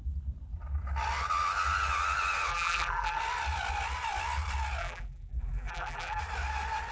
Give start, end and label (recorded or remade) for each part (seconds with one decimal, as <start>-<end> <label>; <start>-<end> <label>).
0.0-2.5 recorded; 2.5-3.2 remade; 3.2-4.8 recorded; 4.8-6.2 remade; 6.2-6.9 recorded